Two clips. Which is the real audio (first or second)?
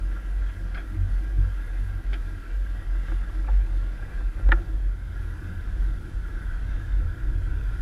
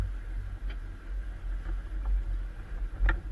second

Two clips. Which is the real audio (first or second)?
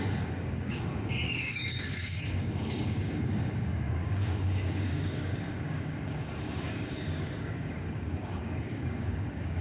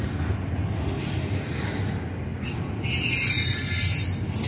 second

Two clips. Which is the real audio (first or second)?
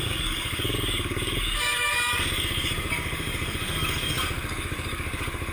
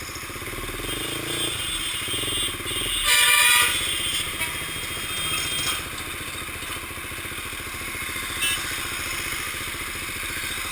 second